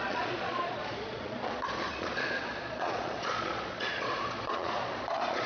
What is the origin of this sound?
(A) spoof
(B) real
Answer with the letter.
A